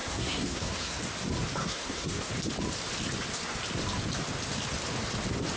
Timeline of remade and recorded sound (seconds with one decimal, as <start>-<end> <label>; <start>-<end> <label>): 0.0-1.0 remade; 1.0-1.6 recorded; 1.6-2.3 remade; 2.3-5.6 recorded